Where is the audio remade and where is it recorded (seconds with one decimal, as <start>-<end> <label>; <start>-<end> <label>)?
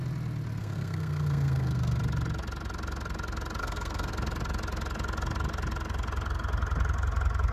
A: 0.0-0.6 recorded; 0.6-2.0 remade; 2.0-3.6 recorded; 3.6-4.1 remade; 4.1-7.5 recorded